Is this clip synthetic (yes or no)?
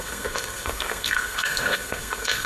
yes